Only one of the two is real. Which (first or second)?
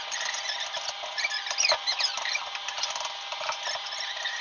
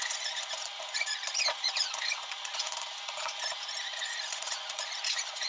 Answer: first